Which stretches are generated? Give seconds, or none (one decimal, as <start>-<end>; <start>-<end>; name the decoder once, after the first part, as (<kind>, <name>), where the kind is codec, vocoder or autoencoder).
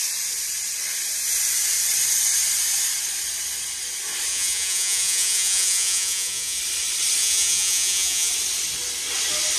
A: 4.3-6.6 (vocoder, Vocos); 7.2-8.3